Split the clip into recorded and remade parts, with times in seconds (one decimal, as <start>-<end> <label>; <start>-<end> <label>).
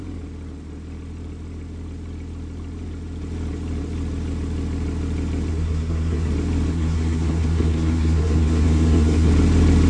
0.0-5.5 recorded; 5.5-6.3 remade; 6.3-6.7 recorded; 6.7-9.3 remade; 9.3-9.9 recorded